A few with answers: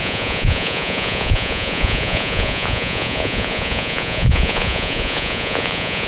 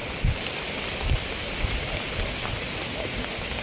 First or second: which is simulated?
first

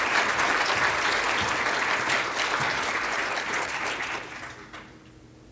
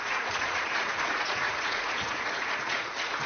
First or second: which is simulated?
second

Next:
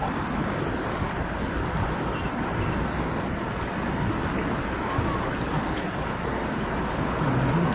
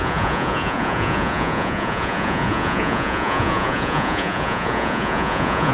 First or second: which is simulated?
second